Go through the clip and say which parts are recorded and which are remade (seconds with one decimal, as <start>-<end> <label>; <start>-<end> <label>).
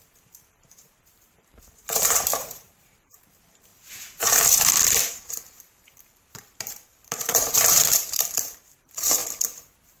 0.0-3.7 remade; 3.7-5.1 recorded; 5.1-9.2 remade; 9.2-10.0 recorded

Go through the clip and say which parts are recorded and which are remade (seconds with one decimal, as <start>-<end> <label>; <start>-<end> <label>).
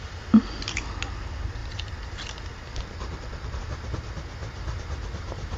0.0-5.6 recorded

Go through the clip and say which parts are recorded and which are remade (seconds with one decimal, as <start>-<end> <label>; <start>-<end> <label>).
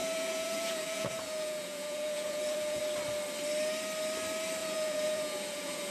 0.0-2.8 remade; 2.8-4.6 recorded; 4.6-5.9 remade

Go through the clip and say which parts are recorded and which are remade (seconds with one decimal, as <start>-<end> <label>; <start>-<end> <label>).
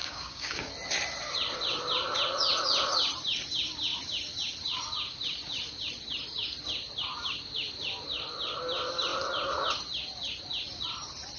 0.0-0.7 remade; 0.7-11.4 recorded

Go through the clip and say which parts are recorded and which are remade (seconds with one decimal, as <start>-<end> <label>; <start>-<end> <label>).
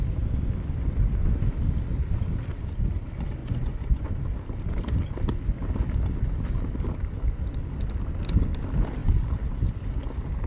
0.0-3.4 recorded; 3.4-4.1 remade; 4.1-10.5 recorded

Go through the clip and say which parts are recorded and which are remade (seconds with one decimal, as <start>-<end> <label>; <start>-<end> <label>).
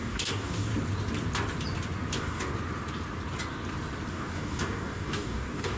0.0-0.7 remade; 0.7-2.1 recorded; 2.1-2.5 remade; 2.5-4.1 recorded; 4.1-5.8 remade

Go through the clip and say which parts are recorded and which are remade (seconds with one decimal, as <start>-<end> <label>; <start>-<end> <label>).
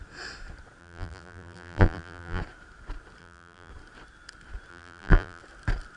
0.0-0.8 recorded; 0.8-2.4 remade; 2.4-3.2 recorded; 3.2-3.7 remade; 3.7-4.7 recorded; 4.7-5.4 remade; 5.4-6.0 recorded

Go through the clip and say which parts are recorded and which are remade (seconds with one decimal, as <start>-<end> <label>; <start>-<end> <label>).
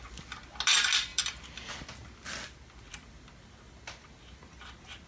0.0-5.1 recorded